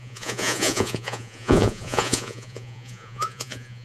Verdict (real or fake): fake